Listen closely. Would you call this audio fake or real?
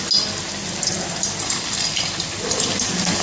real